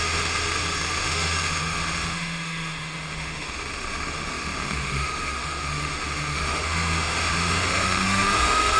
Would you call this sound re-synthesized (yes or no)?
yes